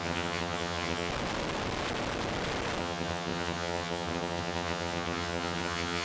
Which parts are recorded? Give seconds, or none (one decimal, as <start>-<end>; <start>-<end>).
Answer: 1.1-2.8